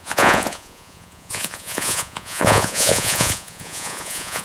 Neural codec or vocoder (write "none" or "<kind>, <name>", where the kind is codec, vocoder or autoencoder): vocoder, Vocos